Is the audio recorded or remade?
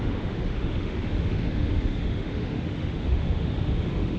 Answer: remade